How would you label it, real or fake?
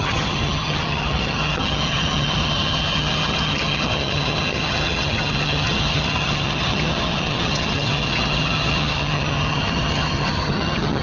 fake